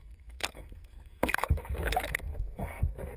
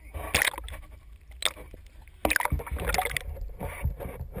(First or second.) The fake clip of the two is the first